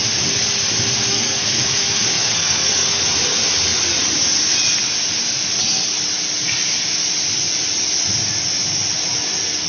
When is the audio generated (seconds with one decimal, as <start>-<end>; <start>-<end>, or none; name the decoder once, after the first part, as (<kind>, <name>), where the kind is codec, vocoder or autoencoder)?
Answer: 1.1-3.0 (codec, SNAC)